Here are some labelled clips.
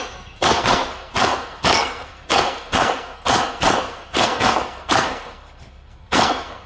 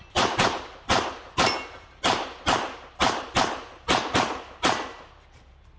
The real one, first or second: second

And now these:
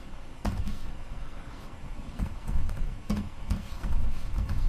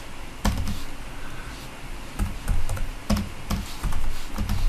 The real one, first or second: second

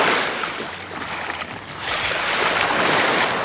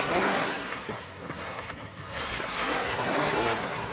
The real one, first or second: first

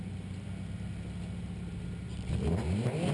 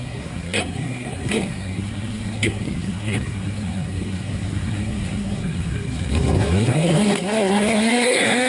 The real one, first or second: first